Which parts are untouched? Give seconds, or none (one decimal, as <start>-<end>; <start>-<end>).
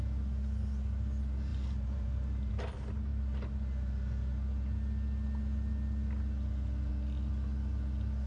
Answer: 0.0-1.5; 2.5-8.3